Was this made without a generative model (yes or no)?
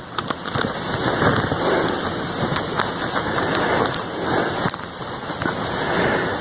yes